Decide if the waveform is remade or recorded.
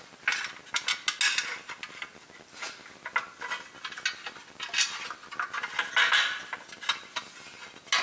recorded